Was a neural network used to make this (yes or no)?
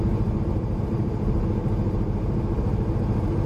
yes